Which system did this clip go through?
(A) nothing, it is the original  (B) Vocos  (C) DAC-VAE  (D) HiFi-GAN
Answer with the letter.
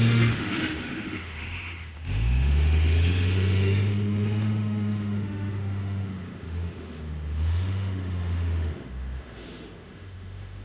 C